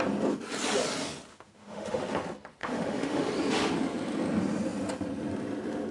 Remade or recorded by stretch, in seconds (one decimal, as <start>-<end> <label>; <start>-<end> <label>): 0.0-1.3 recorded; 1.3-2.0 remade; 2.0-2.6 recorded; 2.6-3.3 remade; 3.3-5.9 recorded

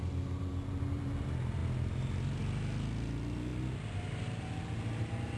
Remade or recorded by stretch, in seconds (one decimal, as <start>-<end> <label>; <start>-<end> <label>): 0.0-5.4 recorded

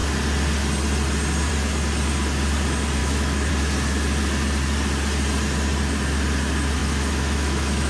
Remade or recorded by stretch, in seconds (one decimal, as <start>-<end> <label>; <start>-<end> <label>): 0.0-3.0 recorded; 3.0-3.5 remade; 3.5-6.8 recorded; 6.8-7.9 remade

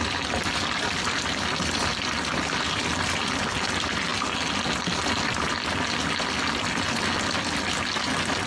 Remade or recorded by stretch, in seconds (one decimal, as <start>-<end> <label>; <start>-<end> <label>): 0.0-8.5 recorded

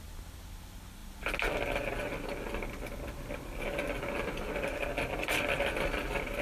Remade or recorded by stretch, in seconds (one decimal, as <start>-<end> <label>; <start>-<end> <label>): 0.0-6.4 recorded